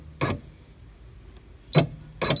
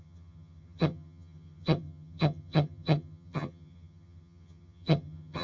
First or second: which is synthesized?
second